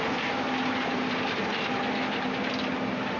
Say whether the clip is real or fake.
real